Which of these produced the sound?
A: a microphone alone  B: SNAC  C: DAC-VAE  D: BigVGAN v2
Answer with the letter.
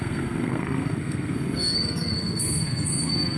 B